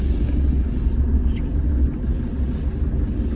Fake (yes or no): no